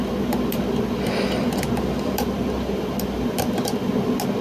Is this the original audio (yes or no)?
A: yes